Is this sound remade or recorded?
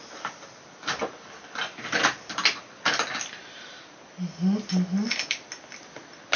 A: recorded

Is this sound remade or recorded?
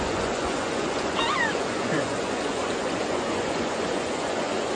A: remade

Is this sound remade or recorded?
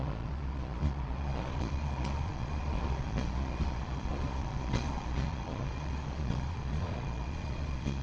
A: remade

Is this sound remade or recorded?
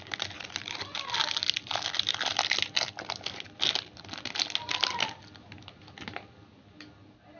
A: recorded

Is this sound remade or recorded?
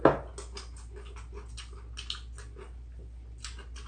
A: recorded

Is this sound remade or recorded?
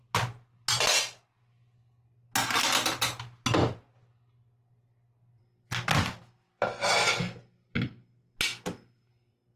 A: recorded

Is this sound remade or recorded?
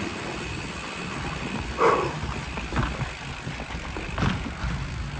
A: recorded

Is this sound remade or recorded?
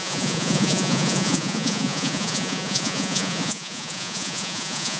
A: remade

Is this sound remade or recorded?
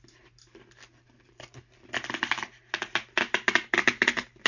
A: recorded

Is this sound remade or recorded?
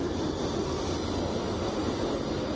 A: recorded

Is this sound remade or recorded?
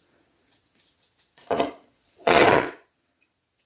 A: remade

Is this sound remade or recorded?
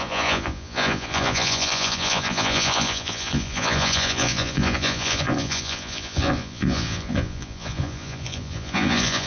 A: remade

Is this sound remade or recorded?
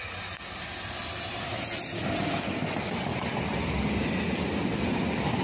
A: recorded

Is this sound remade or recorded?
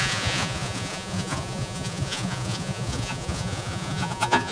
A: remade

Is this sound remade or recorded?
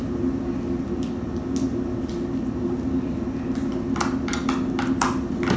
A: recorded